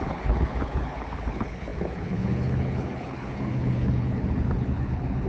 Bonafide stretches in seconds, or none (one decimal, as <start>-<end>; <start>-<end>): none